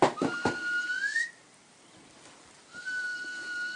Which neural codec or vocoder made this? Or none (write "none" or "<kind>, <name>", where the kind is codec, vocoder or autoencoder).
none